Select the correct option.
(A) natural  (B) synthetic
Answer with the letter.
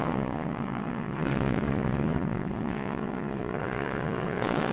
B